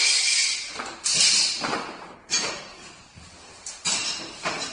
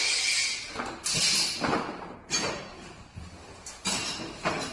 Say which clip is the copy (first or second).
first